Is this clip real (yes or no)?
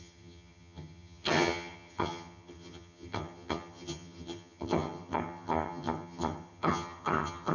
no